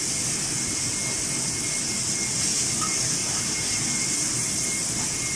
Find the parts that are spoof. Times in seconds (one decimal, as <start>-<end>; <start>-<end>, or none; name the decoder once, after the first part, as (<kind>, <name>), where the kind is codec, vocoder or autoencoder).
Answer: none